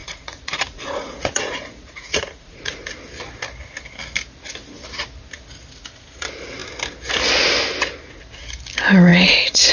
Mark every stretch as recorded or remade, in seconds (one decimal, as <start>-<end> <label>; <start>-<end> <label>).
0.0-2.9 remade; 2.9-9.1 recorded; 9.1-9.7 remade

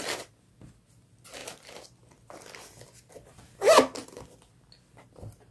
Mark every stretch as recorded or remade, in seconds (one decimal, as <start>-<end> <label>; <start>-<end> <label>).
0.0-4.0 recorded; 4.0-4.6 remade; 4.6-5.5 recorded

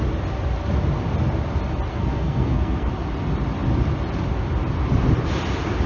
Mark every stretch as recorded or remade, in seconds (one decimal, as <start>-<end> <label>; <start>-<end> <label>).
0.0-1.9 recorded; 1.9-2.9 remade; 2.9-5.9 recorded

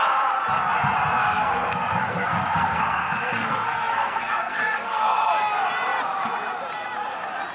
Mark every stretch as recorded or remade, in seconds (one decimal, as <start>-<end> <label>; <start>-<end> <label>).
0.0-1.2 recorded; 1.2-5.3 remade; 5.3-7.5 recorded

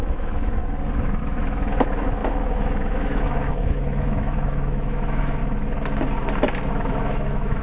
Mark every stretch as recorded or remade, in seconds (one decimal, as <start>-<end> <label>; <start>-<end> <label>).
0.0-0.6 remade; 0.6-1.2 recorded; 1.2-5.4 remade; 5.4-6.7 recorded; 6.7-7.6 remade

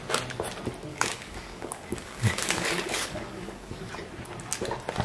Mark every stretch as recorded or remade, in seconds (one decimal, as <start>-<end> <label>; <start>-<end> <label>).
0.0-0.9 recorded; 0.9-3.9 remade; 3.9-5.0 recorded

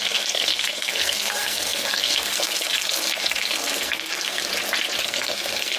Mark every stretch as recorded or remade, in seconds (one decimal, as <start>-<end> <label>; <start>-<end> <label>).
0.0-4.5 remade; 4.5-5.0 recorded; 5.0-5.8 remade